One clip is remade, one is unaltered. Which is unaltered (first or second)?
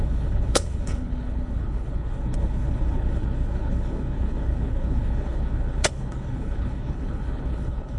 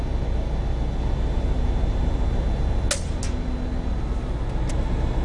second